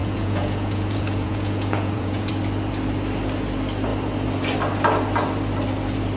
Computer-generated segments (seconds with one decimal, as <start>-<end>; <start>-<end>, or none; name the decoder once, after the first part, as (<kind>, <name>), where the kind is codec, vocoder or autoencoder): 0.0-2.3 (vocoder, Vocos)